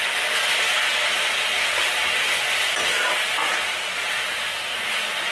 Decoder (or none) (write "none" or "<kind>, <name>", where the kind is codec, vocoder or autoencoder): none